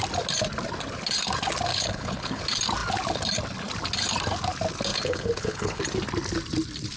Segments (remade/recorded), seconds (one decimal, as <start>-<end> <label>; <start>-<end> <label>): 0.0-1.7 recorded; 1.7-2.4 remade; 2.4-4.9 recorded; 4.9-5.8 remade; 5.8-7.0 recorded